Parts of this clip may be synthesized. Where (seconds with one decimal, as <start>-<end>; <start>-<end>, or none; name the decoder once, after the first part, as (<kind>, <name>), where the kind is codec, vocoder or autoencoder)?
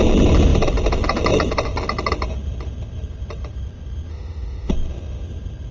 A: 4.1-4.7 (autoencoder, DAC-VAE)